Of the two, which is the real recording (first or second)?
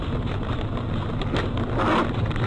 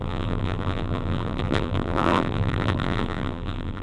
first